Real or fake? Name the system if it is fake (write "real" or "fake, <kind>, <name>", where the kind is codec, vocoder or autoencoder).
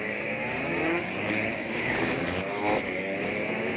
fake, codec, DAC